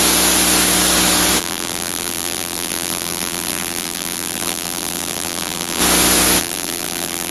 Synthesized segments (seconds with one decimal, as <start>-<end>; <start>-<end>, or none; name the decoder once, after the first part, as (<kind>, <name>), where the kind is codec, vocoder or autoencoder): 1.4-5.8 (vocoder, BigVGAN v2); 6.4-7.3